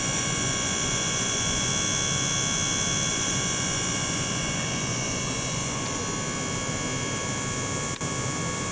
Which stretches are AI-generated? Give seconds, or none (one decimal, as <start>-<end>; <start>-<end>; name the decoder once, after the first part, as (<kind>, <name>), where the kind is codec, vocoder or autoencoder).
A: 0.0-1.7 (vocoder, Vocos); 3.1-6.0